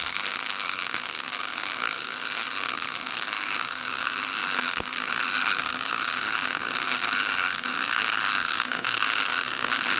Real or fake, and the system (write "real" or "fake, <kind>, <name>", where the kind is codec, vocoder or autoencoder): fake, codec, SNAC